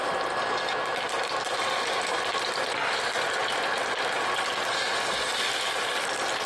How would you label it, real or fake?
real